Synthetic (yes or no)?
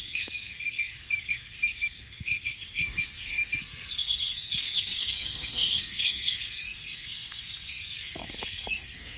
yes